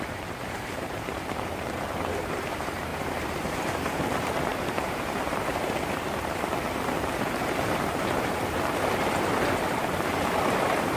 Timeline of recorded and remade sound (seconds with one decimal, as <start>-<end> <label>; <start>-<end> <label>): 0.0-11.0 remade